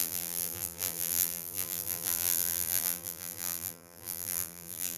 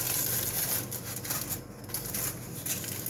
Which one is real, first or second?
second